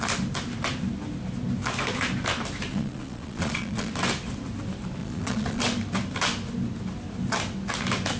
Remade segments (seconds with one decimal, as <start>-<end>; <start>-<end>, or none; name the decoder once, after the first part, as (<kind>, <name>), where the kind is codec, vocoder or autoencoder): 2.7-3.9 (vocoder, Vocos); 5.0-5.6